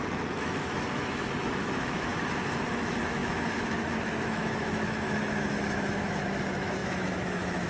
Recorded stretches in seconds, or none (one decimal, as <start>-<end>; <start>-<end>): 2.1-2.7